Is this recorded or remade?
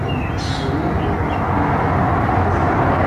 recorded